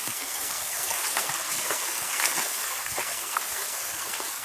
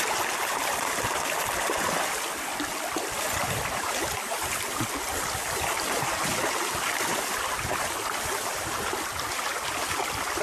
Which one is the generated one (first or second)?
first